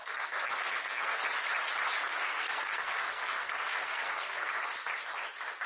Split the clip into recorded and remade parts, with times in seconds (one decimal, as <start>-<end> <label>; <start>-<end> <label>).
0.0-1.2 remade; 1.2-2.0 recorded; 2.0-4.5 remade; 4.5-5.7 recorded